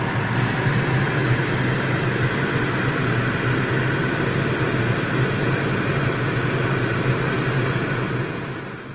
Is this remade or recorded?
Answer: recorded